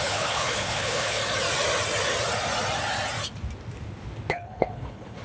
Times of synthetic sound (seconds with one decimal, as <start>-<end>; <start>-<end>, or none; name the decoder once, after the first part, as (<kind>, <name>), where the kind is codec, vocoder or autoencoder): 0.0-1.2 (codec, HILCodec); 4.3-5.2